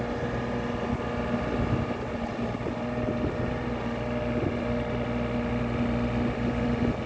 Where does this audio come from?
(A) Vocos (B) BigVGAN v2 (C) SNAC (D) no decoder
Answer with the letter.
D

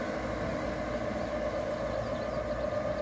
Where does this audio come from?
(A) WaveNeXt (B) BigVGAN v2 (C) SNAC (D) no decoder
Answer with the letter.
D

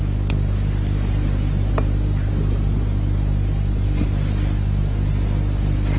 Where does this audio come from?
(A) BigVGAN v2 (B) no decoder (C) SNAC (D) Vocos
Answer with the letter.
B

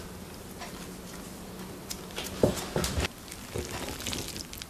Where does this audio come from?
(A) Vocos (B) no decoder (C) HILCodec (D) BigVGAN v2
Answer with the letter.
B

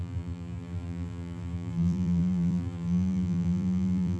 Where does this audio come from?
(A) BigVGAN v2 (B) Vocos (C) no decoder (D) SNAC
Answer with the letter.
A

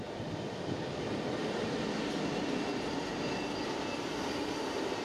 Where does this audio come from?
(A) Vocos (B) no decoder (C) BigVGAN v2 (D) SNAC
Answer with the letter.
B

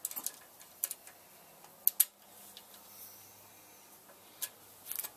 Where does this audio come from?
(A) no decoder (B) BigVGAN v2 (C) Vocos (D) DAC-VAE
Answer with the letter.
A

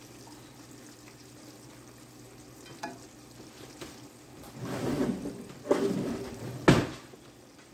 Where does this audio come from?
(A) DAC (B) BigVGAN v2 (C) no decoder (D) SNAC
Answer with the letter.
C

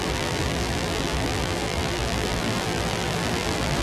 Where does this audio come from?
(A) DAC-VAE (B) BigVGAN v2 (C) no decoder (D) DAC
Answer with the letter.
B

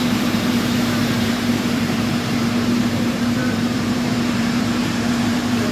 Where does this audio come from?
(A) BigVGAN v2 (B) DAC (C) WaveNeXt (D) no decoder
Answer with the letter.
A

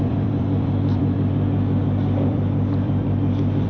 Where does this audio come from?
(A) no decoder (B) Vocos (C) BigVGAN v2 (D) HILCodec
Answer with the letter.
C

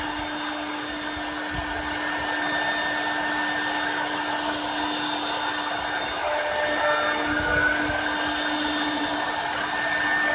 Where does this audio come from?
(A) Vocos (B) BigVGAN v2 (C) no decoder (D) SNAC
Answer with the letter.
C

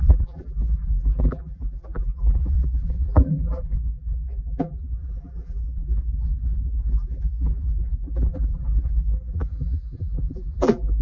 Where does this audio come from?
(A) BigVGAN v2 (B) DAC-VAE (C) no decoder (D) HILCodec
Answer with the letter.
A